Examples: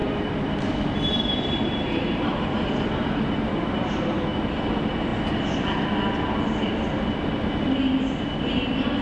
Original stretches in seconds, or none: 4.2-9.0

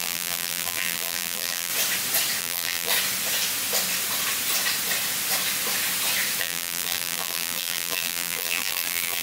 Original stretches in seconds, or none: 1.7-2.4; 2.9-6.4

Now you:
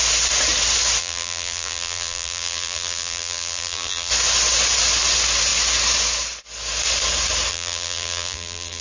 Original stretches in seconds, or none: 0.0-1.0; 4.1-7.5